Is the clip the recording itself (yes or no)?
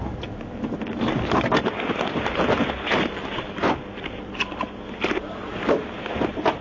yes